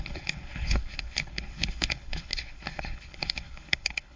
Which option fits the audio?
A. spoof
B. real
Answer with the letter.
A